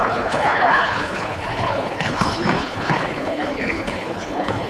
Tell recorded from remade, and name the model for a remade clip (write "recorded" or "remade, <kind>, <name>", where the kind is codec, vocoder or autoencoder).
remade, codec, HILCodec